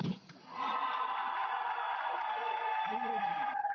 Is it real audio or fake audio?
real